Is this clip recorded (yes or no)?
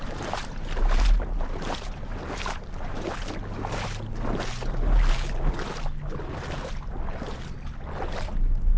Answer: yes